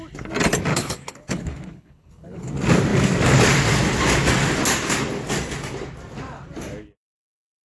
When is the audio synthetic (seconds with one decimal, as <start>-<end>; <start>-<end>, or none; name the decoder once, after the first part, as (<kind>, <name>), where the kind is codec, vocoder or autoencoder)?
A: 0.7-2.5 (codec, HILCodec)